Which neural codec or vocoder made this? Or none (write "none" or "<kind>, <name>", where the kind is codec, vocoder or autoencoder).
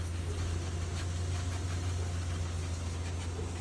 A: none